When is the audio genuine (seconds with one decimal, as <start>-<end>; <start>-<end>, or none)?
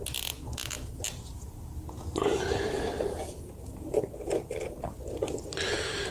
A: 0.0-0.6; 4.0-6.1